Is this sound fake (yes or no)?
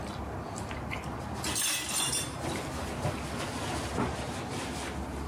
no